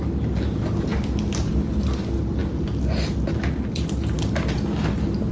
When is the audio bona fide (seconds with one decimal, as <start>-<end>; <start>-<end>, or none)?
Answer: 0.0-5.3